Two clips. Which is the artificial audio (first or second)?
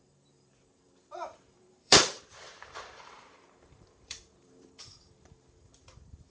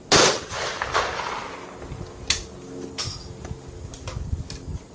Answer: first